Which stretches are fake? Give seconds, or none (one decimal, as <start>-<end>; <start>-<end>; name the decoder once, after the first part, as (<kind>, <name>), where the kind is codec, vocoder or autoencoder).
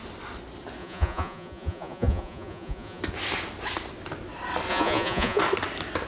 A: 0.8-3.0 (vocoder, Vocos); 4.7-5.4